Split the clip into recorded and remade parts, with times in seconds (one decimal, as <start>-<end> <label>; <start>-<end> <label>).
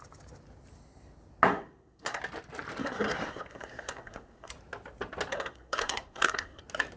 0.0-1.5 recorded; 1.5-2.2 remade; 2.2-2.8 recorded; 2.8-4.5 remade; 4.5-5.3 recorded; 5.3-6.6 remade; 6.6-7.0 recorded